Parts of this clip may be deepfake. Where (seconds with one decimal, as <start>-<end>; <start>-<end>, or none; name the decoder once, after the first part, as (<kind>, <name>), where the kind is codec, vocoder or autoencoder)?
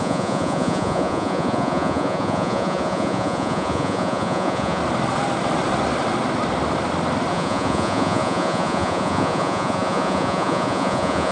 0.0-4.8 (vocoder, Vocos); 7.3-11.3